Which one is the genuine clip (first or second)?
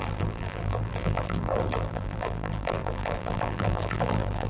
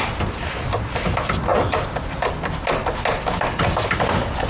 second